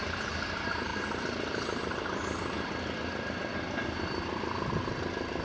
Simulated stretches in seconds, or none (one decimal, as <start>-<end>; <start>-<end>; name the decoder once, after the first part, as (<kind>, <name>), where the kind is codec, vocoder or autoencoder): none